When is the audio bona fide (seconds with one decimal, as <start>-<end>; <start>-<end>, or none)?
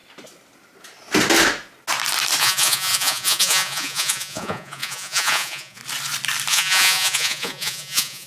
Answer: 0.0-2.4; 5.8-6.5